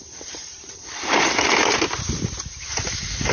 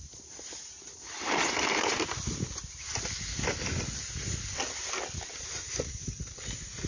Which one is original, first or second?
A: second